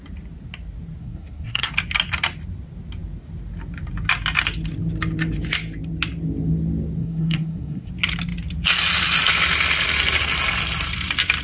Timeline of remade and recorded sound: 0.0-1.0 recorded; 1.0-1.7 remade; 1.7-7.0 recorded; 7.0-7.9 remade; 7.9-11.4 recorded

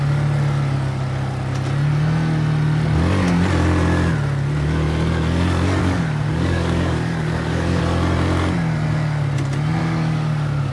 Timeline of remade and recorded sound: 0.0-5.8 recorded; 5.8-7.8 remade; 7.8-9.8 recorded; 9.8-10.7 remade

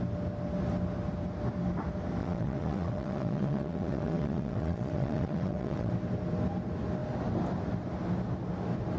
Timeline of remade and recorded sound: 0.0-2.2 recorded; 2.2-5.9 remade; 5.9-9.0 recorded

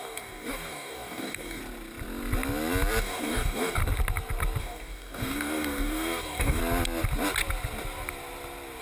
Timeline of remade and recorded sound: 0.0-1.6 remade; 1.6-3.0 recorded; 3.0-3.8 remade; 3.8-4.6 recorded; 4.6-6.6 remade; 6.6-8.8 recorded

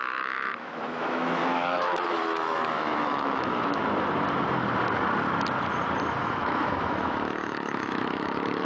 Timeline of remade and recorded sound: 0.0-3.8 remade; 3.8-6.2 recorded; 6.2-8.6 remade

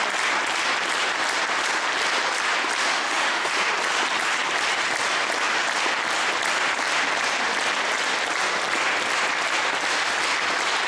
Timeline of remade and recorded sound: 0.0-2.8 recorded; 2.8-3.5 remade; 3.5-10.9 recorded